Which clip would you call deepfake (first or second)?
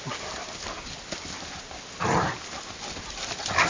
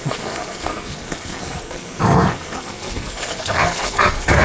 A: second